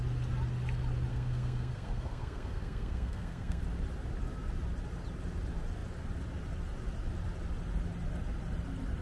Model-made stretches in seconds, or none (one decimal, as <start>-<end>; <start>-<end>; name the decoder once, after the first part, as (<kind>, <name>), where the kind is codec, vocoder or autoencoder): 1.1-3.6 (codec, SNAC)